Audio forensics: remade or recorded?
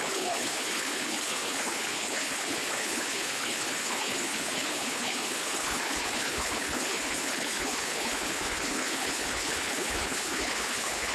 remade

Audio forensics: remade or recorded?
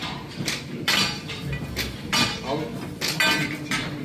recorded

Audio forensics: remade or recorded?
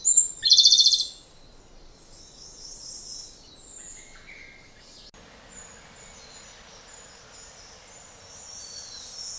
recorded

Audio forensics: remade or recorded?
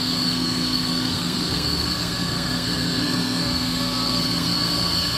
remade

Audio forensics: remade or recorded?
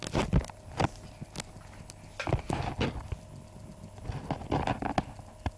recorded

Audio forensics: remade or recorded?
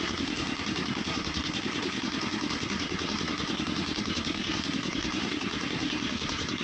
remade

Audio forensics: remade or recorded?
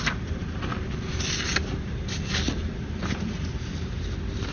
recorded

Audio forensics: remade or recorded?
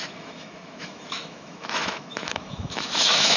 remade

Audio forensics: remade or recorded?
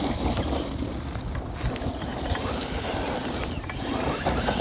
recorded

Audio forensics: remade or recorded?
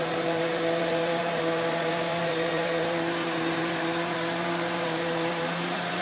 remade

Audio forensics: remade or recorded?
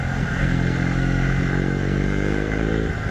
remade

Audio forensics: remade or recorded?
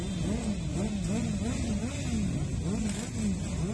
recorded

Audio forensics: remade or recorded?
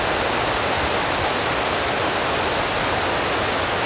recorded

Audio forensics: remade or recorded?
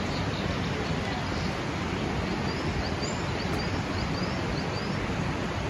recorded